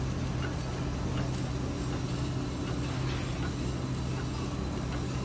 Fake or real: real